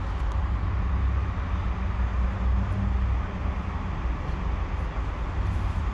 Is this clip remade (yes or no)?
no